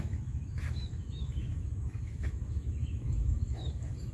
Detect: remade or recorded remade